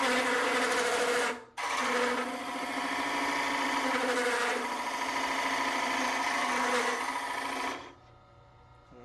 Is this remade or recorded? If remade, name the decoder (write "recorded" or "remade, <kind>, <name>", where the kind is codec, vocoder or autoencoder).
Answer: recorded